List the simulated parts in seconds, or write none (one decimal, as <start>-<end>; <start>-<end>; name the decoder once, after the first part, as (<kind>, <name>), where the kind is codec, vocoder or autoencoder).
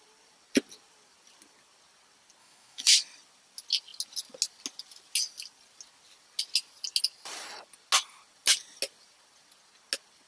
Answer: 2.4-2.9 (autoencoder, DAC-VAE)